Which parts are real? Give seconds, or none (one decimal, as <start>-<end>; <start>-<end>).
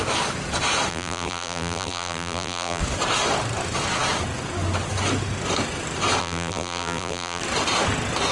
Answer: 0.0-0.9; 2.8-6.2; 7.4-8.3